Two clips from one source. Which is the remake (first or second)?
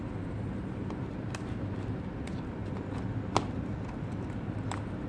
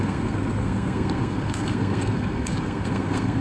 second